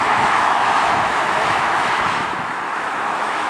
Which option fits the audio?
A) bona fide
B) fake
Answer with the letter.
B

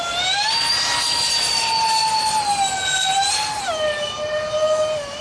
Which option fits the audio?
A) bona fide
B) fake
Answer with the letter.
A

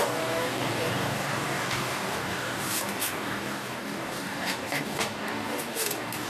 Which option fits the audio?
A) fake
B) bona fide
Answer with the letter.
A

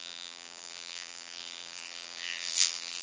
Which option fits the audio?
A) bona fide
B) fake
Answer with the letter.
B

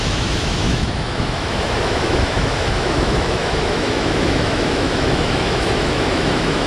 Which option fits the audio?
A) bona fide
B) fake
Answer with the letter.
B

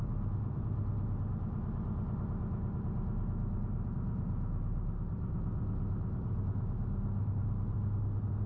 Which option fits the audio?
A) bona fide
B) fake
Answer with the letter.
A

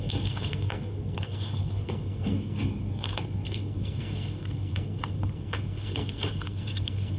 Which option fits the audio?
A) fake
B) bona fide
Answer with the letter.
A